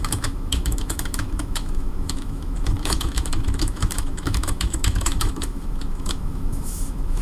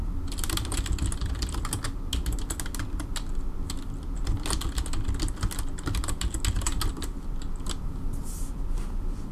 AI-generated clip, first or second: first